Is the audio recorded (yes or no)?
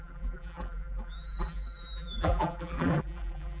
no